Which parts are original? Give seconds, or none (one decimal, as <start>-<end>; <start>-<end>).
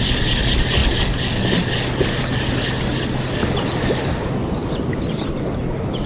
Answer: 0.0-6.1